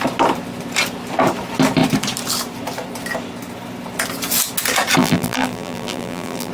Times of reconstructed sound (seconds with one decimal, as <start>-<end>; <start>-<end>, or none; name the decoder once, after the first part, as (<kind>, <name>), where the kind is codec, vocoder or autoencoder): 5.0-6.5 (vocoder, BigVGAN v2)